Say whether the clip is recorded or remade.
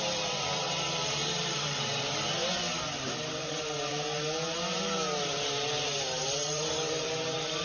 remade